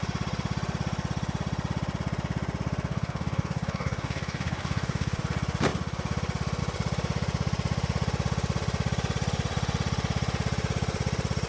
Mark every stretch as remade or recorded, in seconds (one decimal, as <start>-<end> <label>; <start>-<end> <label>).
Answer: 0.0-2.9 recorded; 2.9-5.2 remade; 5.2-11.5 recorded